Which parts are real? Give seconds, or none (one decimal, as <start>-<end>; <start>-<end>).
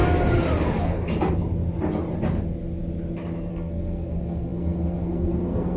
0.0-3.5